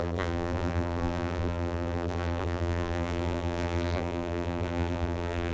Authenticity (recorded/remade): remade